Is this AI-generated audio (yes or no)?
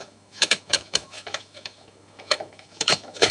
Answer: yes